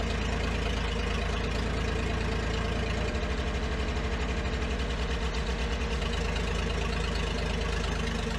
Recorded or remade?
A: recorded